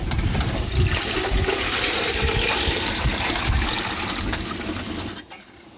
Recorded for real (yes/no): yes